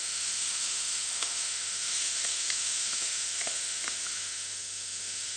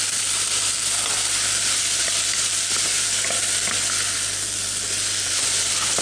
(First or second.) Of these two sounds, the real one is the second